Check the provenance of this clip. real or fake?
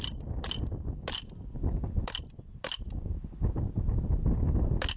real